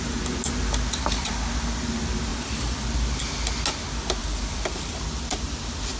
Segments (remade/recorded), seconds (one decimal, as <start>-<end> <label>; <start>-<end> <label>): 0.0-2.3 recorded; 2.3-2.9 remade; 2.9-4.2 recorded; 4.2-5.0 remade; 5.0-6.0 recorded